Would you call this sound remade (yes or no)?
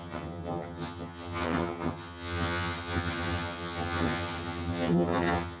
yes